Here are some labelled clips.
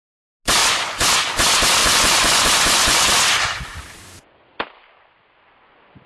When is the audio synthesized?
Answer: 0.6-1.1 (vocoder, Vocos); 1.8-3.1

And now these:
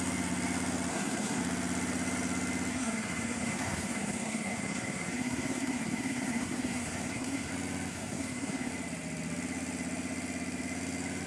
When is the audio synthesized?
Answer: 0.9-1.4 (codec, SNAC); 2.7-7.5; 7.9-8.7

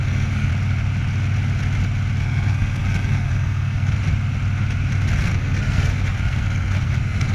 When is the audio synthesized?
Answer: 0.0-0.5 (codec, SNAC); 2.2-4.0; 5.2-7.3